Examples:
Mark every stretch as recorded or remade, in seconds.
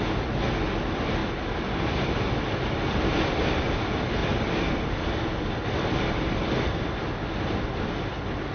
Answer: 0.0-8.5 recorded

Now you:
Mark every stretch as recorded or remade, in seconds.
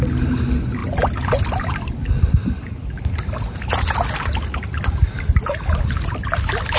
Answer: 0.0-6.8 recorded